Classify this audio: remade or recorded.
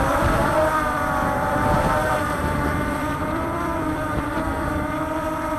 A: remade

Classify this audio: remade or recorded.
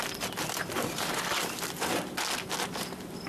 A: recorded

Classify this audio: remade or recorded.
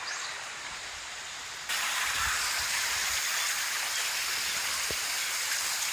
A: recorded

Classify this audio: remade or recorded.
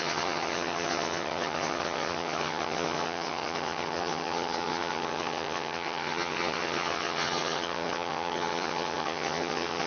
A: remade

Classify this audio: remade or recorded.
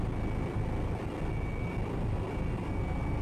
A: recorded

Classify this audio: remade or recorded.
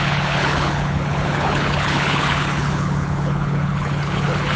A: remade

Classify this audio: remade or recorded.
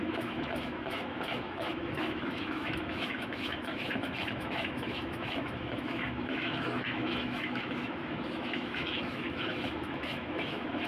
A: remade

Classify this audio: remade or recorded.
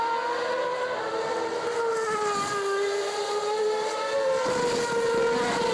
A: recorded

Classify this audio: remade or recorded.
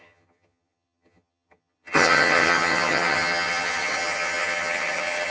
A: remade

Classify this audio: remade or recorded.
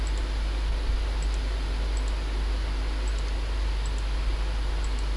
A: recorded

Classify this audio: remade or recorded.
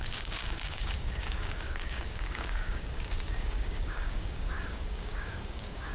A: remade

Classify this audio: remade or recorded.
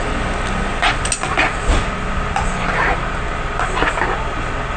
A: recorded